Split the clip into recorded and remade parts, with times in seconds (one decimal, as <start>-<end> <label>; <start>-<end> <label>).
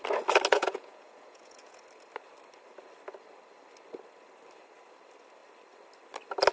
0.0-0.5 recorded; 0.5-1.8 remade; 1.8-6.5 recorded